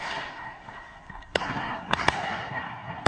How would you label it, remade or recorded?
remade